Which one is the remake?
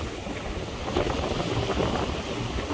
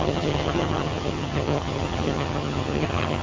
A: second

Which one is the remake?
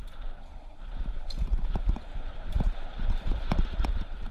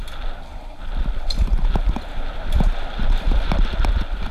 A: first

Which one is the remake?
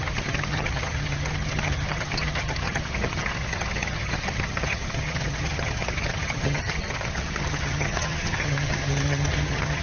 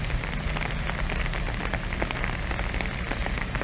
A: first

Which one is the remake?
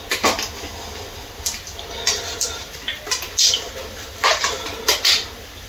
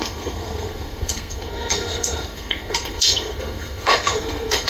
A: second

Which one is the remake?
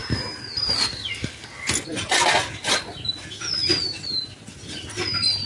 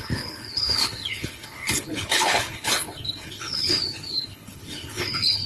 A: second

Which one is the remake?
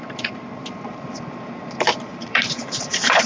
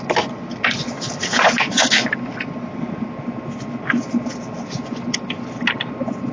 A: first